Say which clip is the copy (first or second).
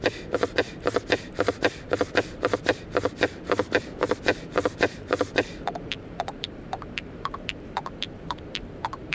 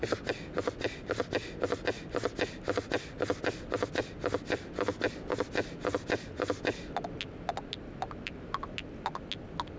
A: first